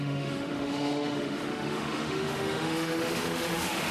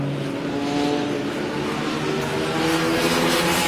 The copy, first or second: first